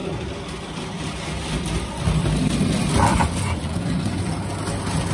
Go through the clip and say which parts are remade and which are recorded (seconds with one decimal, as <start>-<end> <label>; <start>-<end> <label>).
0.0-3.1 recorded; 3.1-4.3 remade; 4.3-5.1 recorded